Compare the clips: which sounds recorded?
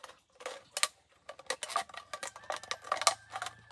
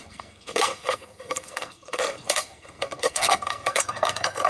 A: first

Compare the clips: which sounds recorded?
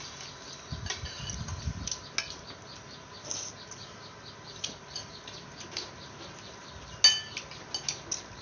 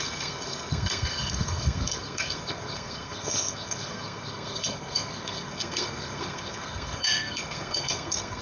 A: first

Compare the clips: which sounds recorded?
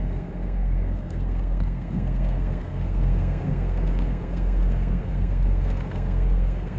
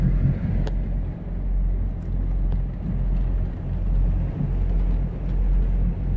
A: second